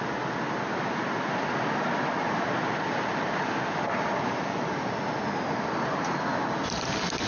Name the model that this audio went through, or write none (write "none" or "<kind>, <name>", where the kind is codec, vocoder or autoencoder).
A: none